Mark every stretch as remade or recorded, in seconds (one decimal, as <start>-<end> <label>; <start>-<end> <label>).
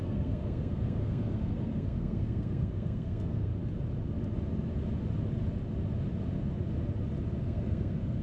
0.0-3.5 remade; 3.5-7.4 recorded; 7.4-8.2 remade